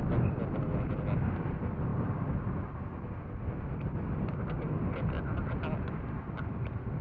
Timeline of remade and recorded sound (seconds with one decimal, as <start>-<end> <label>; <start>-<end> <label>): 0.0-7.0 recorded